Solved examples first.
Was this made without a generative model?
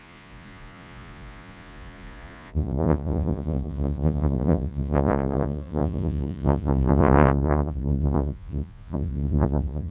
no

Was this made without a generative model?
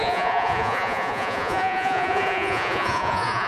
no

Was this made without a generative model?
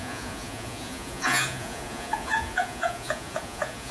no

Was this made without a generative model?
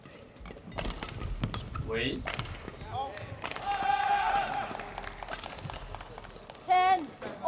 yes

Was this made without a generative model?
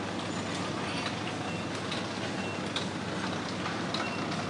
yes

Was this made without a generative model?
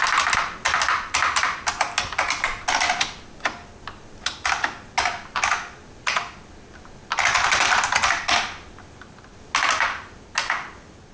yes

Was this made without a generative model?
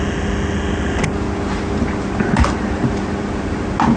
yes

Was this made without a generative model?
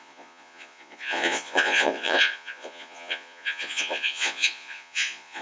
no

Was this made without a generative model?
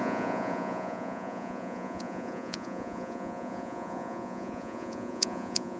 no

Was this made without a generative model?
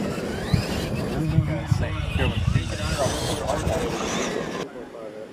yes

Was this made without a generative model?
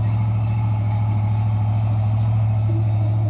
yes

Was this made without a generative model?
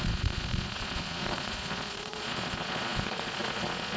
no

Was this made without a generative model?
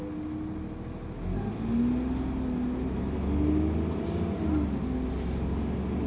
yes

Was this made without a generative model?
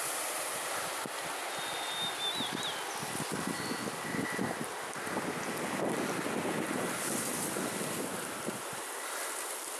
yes